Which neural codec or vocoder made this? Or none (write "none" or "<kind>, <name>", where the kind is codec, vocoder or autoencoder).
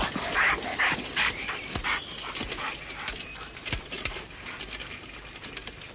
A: none